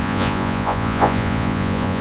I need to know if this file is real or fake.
fake